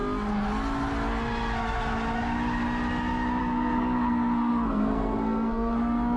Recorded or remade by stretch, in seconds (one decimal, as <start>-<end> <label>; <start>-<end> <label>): 0.0-3.4 recorded; 3.4-6.2 remade